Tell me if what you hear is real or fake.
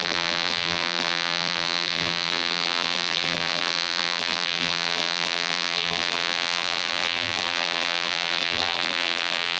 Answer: fake